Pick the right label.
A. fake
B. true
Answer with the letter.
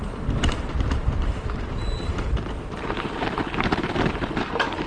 A